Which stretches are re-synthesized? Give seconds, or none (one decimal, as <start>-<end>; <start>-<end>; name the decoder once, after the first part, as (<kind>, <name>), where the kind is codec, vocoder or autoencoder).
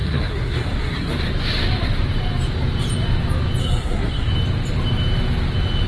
0.0-1.1 (codec, SNAC); 3.6-4.3